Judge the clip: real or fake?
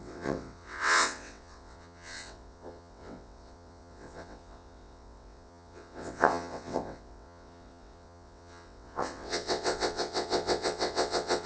fake